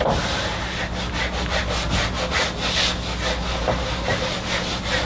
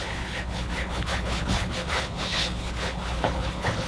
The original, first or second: first